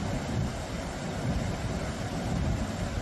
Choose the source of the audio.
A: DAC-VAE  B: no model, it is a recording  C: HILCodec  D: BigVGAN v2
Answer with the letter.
B